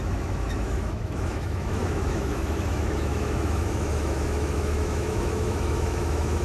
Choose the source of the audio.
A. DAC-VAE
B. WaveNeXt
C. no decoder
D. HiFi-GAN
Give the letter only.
A